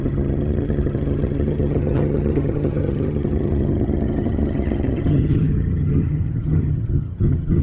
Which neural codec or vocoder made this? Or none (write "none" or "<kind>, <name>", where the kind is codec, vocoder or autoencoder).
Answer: vocoder, HiFi-GAN